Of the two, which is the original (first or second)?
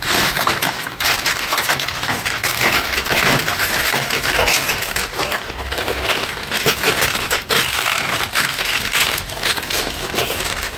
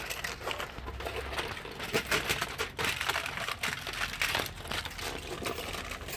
second